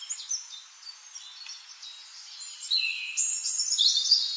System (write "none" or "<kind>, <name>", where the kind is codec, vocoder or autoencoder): none